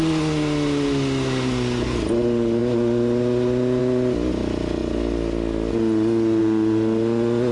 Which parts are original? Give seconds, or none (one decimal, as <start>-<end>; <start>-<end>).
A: 0.0-7.5